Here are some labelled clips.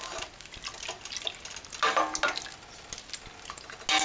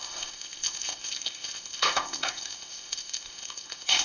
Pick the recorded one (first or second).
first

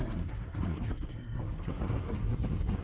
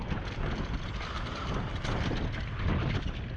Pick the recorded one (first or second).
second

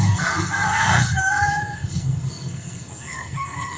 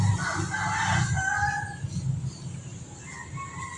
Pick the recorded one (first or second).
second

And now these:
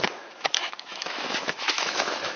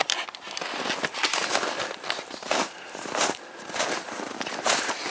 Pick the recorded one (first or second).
second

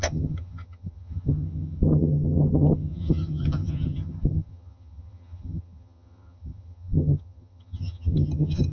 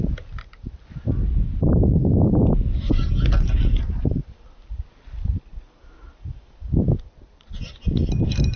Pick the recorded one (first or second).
second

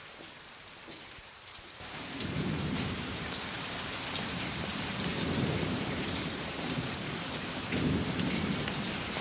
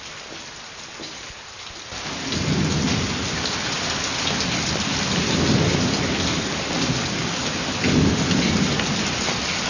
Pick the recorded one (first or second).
second